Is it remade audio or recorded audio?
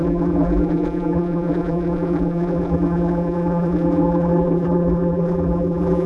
remade